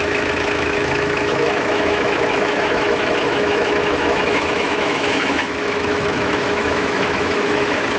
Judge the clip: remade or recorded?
remade